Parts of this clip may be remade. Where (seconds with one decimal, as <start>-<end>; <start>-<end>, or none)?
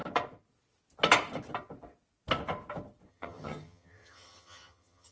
3.1-5.1